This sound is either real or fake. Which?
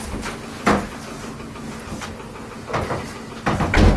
real